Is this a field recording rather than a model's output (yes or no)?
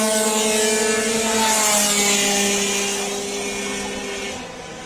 yes